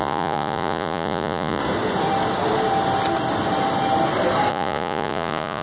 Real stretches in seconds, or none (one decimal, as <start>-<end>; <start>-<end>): 1.6-4.5